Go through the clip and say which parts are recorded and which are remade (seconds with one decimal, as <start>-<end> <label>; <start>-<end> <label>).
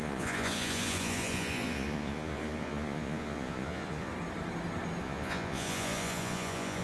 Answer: 0.0-4.1 remade; 4.1-5.0 recorded; 5.0-6.8 remade